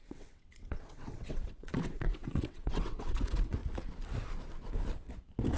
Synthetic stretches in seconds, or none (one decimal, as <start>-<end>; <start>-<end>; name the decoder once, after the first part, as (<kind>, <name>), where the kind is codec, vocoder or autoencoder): 0.0-3.6 (vocoder, WaveNeXt)